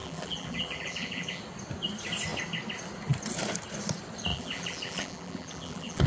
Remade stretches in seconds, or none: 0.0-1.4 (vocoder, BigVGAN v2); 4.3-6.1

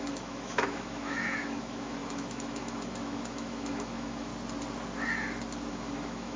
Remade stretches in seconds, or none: 0.0-4.3 (autoencoder, DAC-VAE); 5.7-6.4

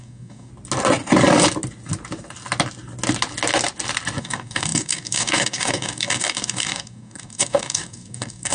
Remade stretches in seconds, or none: 0.0-0.5 (codec, DAC); 4.2-8.5

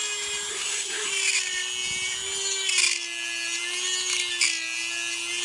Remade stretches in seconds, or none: 0.5-1.1 (codec, SNAC)

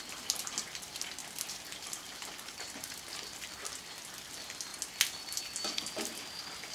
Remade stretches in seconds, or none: none

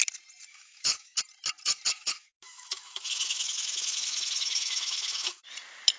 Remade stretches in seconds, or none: 0.5-1.2 (autoencoder, DAC-VAE); 1.9-5.4